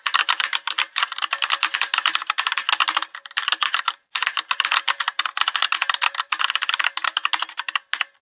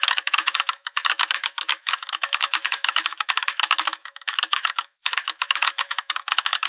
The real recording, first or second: first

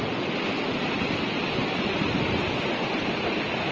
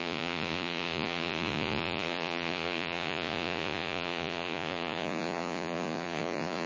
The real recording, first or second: first